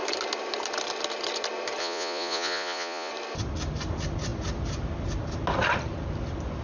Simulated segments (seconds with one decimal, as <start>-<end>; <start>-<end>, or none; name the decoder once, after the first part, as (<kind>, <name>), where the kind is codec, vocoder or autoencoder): 1.8-3.1 (vocoder, Vocos)